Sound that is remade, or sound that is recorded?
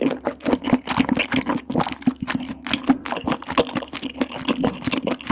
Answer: recorded